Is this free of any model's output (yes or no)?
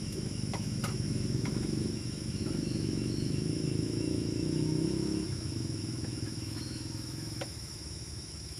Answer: no